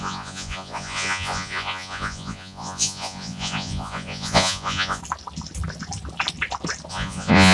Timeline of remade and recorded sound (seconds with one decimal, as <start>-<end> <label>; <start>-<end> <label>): 0.0-5.0 remade; 5.0-6.9 recorded; 6.9-7.5 remade